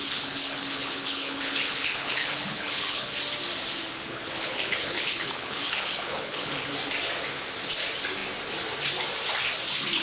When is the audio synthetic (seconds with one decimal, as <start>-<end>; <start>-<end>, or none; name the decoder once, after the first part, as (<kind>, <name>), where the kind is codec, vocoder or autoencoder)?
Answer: 0.0-3.1 (codec, HILCodec); 3.9-6.7